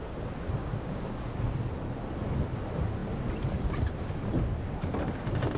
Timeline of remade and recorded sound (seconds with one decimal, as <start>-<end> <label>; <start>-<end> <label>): 0.0-0.6 recorded; 0.6-1.2 remade; 1.2-5.6 recorded